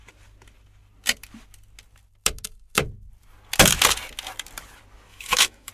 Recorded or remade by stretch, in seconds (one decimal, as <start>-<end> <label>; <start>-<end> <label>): 0.0-5.1 recorded; 5.1-5.7 remade